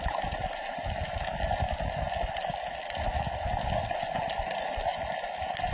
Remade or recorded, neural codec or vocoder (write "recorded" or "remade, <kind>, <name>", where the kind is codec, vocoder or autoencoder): recorded